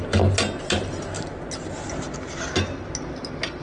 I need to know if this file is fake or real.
real